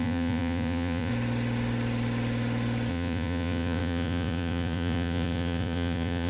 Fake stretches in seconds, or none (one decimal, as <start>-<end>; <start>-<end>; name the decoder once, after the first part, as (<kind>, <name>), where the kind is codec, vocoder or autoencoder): 0.0-1.1 (vocoder, Vocos); 2.9-6.3